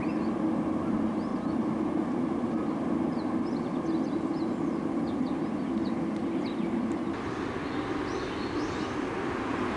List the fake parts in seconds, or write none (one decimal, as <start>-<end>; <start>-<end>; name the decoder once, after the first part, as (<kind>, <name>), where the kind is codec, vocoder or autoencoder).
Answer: none